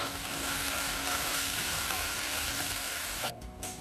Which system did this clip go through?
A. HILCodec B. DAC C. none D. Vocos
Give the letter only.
B